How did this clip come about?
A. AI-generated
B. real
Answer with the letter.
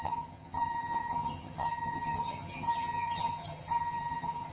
A